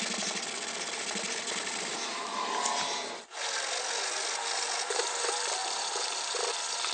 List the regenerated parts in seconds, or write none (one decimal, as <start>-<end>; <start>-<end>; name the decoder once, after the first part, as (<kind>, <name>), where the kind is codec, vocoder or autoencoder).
5.6-6.5 (vocoder, BigVGAN v2)